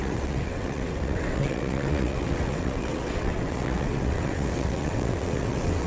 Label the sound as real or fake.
fake